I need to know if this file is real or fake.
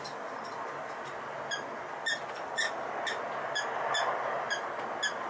real